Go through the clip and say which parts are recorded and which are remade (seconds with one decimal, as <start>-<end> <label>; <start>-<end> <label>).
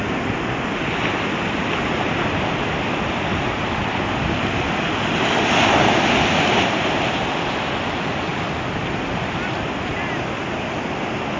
0.0-11.4 recorded